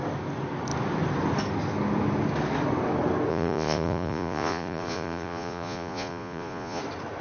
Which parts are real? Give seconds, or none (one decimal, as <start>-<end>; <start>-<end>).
0.0-3.3; 6.8-7.2